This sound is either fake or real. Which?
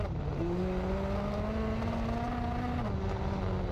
real